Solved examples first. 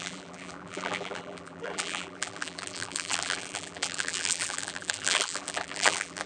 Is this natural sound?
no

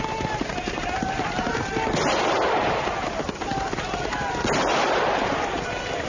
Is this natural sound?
yes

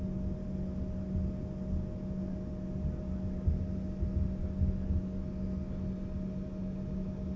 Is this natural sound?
yes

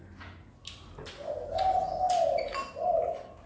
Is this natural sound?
yes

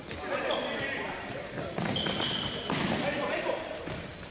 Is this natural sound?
no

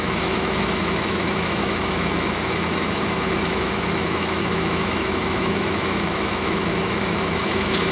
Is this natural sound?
no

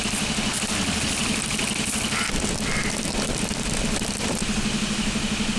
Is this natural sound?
yes